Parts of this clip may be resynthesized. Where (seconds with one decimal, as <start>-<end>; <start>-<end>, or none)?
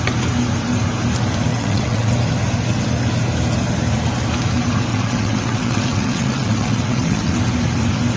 1.5-2.1; 4.9-7.3